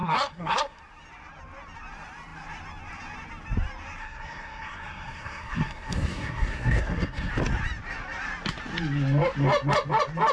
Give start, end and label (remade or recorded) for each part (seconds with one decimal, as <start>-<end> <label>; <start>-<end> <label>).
0.0-0.8 remade; 0.8-4.0 recorded; 4.0-7.3 remade; 7.3-10.3 recorded